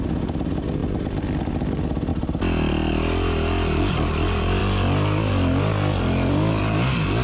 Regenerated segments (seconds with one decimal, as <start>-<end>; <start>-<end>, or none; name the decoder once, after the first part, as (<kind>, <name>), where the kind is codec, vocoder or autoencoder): none